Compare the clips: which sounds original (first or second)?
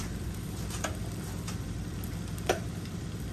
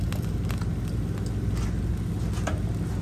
second